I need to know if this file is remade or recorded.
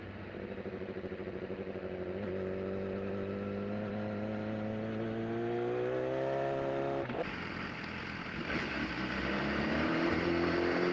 recorded